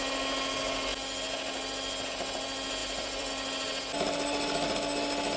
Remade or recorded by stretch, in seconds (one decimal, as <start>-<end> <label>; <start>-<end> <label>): 0.0-2.8 recorded; 2.8-3.3 remade; 3.3-5.4 recorded